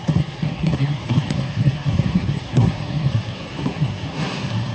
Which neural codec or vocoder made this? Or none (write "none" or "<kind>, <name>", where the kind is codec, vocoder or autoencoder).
codec, SNAC